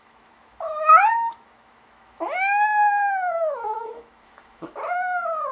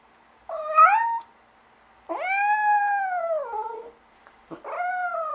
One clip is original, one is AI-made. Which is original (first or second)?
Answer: second